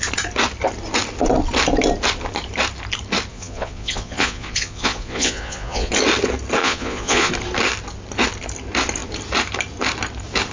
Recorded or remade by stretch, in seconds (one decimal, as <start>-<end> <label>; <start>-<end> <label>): 0.0-3.3 recorded; 3.3-5.9 remade; 5.9-6.6 recorded; 6.6-7.3 remade; 7.3-10.5 recorded